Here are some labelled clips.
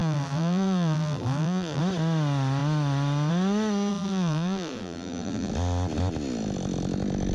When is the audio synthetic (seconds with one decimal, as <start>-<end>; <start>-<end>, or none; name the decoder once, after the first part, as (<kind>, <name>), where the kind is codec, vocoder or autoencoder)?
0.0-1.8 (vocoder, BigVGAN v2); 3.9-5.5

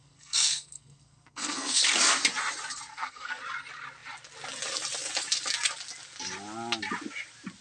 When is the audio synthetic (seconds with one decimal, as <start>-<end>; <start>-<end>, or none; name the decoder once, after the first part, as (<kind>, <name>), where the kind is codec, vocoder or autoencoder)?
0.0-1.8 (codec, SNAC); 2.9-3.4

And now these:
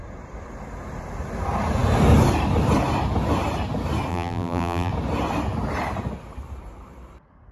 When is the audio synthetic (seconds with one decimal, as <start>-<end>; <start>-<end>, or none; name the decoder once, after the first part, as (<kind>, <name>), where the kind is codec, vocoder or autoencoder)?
4.1-4.9 (vocoder, BigVGAN v2)

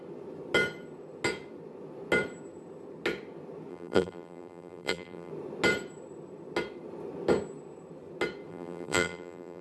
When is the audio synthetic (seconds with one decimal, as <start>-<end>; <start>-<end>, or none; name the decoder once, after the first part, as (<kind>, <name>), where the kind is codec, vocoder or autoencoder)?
3.7-5.3 (vocoder, BigVGAN v2); 8.5-9.6

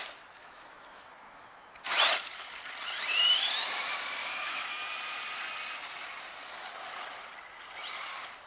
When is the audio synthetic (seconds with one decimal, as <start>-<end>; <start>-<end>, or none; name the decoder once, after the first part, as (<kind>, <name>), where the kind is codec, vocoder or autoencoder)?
0.4-2.0 (autoencoder, DAC-VAE); 4.2-4.7